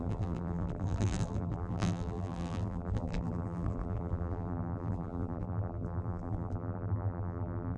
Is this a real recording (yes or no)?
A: no